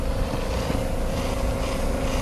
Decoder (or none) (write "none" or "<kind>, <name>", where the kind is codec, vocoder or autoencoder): none